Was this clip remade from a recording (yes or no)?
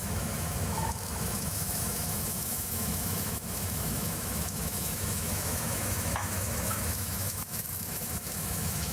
yes